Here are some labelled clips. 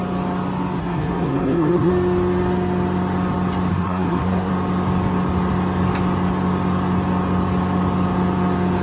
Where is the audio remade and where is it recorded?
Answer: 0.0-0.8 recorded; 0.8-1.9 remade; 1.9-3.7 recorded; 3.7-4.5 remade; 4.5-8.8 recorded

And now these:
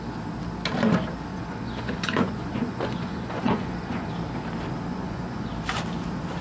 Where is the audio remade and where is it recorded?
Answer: 0.0-1.3 recorded; 1.3-4.1 remade; 4.1-4.9 recorded; 4.9-5.5 remade; 5.5-6.4 recorded